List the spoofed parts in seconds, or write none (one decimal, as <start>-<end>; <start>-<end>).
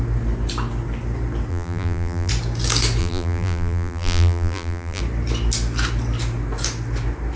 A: 1.5-2.3; 3.0-5.0